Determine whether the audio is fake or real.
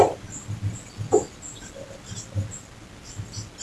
real